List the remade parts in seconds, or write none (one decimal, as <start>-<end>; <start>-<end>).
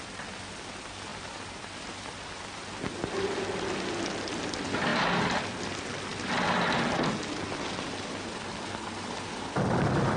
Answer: 1.1-1.7